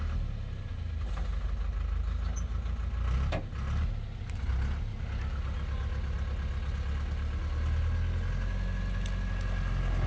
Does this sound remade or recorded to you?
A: recorded